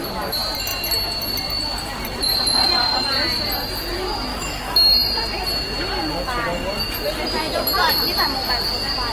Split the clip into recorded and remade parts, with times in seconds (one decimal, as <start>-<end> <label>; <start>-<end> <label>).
0.0-4.3 recorded; 4.3-5.1 remade; 5.1-9.1 recorded